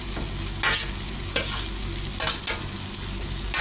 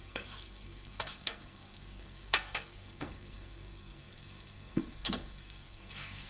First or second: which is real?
first